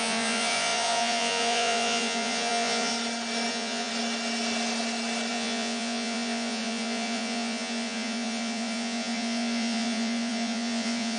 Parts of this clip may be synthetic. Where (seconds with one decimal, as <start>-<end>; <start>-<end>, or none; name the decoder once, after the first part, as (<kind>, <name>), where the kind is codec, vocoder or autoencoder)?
0.0-2.9 (vocoder, Vocos); 3.5-3.9; 5.3-11.2